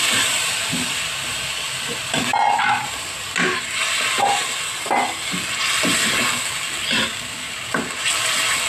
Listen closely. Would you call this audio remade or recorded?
recorded